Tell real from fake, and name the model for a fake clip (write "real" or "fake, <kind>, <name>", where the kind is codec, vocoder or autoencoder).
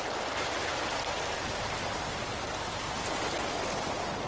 real